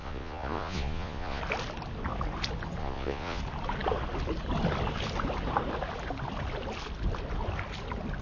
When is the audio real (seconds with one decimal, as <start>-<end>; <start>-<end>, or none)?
1.4-2.8; 3.4-8.2